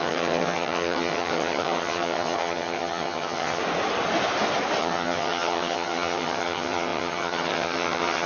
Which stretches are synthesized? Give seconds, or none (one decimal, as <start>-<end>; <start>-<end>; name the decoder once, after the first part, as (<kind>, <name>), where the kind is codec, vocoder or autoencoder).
0.0-3.6 (vocoder, HiFi-GAN); 4.8-8.3